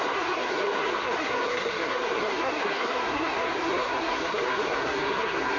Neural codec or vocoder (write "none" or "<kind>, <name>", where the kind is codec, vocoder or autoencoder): codec, SNAC